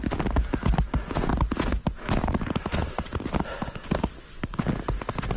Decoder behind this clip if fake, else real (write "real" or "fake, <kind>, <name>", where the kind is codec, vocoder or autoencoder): real